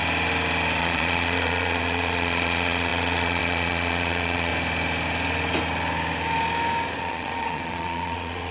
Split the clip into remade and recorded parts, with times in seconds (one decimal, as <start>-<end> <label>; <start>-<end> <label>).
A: 0.0-0.8 recorded; 0.8-4.5 remade; 4.5-7.0 recorded; 7.0-8.5 remade